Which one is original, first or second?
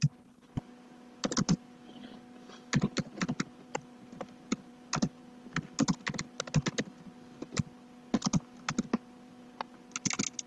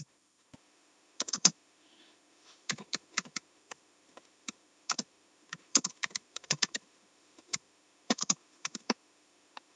first